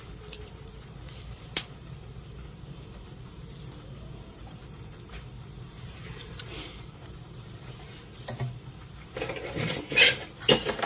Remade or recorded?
remade